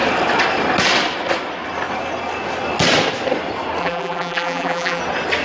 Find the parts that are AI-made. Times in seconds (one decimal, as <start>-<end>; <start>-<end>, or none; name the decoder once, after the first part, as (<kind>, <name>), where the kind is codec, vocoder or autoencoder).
3.8-5.0 (vocoder, BigVGAN v2)